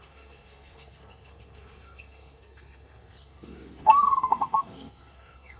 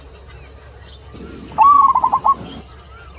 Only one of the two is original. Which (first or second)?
second